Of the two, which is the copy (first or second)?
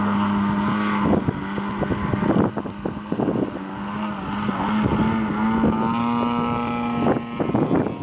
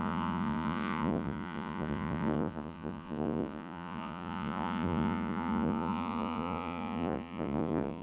second